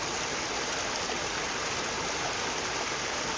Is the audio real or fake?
real